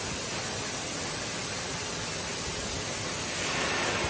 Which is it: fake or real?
fake